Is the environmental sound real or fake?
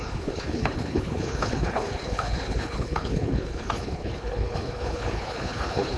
fake